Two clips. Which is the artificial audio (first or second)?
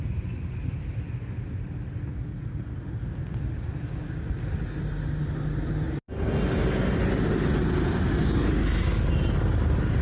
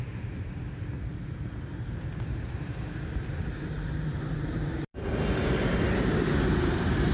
second